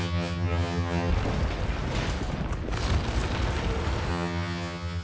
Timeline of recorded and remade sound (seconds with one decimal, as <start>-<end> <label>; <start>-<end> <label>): 0.0-1.1 remade; 1.1-4.1 recorded; 4.1-5.0 remade